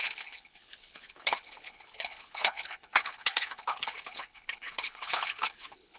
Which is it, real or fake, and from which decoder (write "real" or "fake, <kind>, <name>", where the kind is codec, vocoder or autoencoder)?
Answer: fake, codec, HILCodec